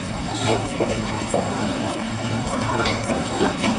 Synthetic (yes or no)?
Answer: yes